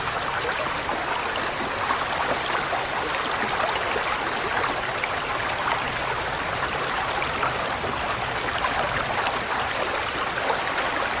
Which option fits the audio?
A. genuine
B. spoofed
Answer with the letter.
A